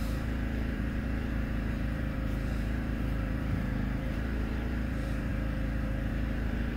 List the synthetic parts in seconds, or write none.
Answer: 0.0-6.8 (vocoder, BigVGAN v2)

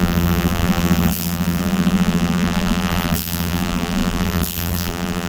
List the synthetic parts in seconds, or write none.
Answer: 0.0-5.3 (vocoder, BigVGAN v2)

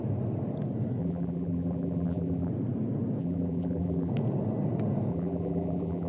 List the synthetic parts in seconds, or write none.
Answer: 1.0-2.5 (vocoder, BigVGAN v2); 3.2-4.1; 5.1-6.1